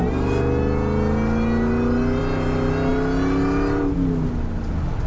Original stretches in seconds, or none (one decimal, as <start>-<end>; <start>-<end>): 0.0-5.1